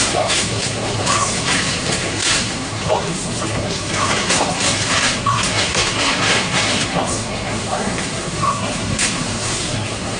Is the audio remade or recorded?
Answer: remade